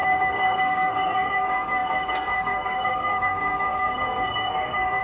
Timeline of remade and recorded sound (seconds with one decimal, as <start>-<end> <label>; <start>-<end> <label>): 0.0-5.0 remade